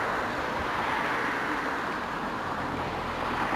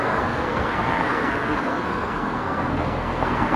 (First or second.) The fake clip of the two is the second